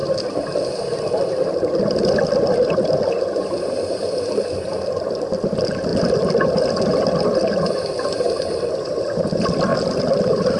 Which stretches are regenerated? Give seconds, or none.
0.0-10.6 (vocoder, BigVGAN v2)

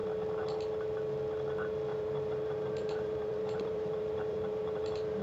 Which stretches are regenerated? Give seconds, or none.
1.9-5.2 (vocoder, BigVGAN v2)

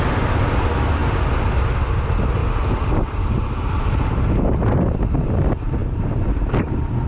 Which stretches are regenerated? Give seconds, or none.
2.4-3.7 (vocoder, BigVGAN v2); 5.8-6.5

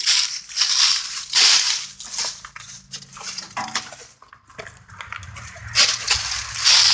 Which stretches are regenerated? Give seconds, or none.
0.9-1.5 (vocoder, BigVGAN v2); 5.1-5.6

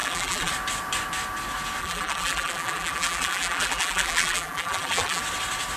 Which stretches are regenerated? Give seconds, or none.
0.0-0.5 (vocoder, BigVGAN v2); 1.8-5.2